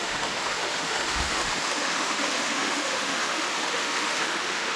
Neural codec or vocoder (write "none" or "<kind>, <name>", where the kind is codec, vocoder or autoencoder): autoencoder, DAC-VAE